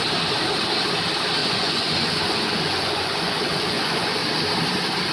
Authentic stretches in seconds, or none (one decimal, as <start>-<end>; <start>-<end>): 0.0-1.4; 4.2-5.1